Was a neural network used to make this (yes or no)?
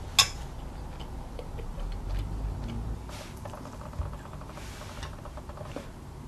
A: no